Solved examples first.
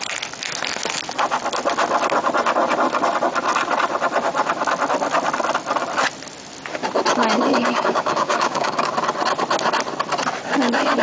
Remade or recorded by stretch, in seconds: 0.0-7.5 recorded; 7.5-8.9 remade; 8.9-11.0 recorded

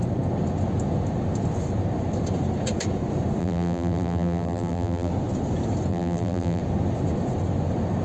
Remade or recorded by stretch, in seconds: 0.0-3.4 recorded; 3.4-5.1 remade; 5.1-5.9 recorded; 5.9-6.6 remade; 6.6-8.0 recorded

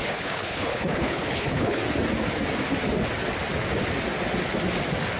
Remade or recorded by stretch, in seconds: 0.0-1.8 remade; 1.8-5.2 recorded

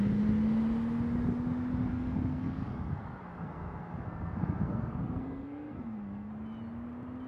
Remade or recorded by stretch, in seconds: 0.0-1.9 recorded; 1.9-6.3 remade; 6.3-7.3 recorded

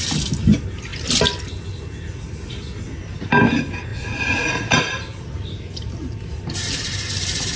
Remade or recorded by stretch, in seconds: 0.0-3.9 recorded; 3.9-4.5 remade; 4.5-7.6 recorded

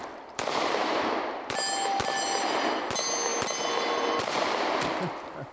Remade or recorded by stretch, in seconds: 0.0-5.5 recorded

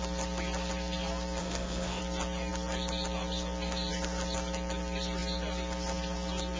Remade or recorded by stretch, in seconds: 0.0-1.4 recorded; 1.4-2.0 remade; 2.0-6.6 recorded

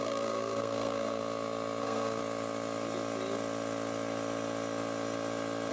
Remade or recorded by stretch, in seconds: 0.0-1.2 remade; 1.2-1.8 recorded; 1.8-2.2 remade; 2.2-5.7 recorded